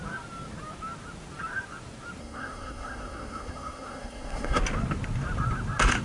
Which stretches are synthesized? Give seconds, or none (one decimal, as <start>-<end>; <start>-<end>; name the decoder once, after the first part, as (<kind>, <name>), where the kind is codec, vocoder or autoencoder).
2.2-4.6 (codec, SNAC)